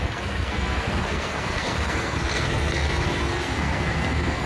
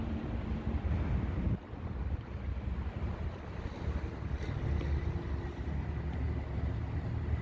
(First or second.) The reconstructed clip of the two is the first